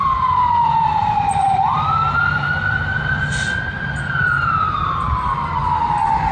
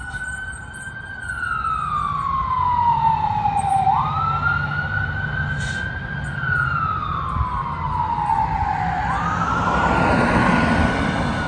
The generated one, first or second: first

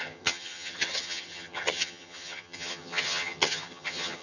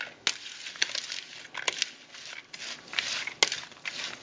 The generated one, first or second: first